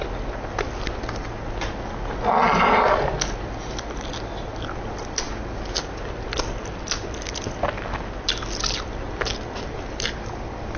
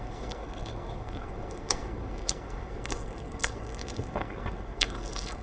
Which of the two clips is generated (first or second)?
second